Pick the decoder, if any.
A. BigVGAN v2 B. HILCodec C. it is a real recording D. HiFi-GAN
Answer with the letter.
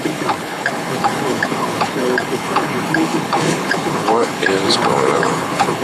B